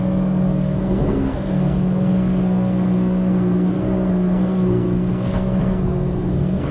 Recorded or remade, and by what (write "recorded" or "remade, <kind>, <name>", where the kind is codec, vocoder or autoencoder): remade, codec, SNAC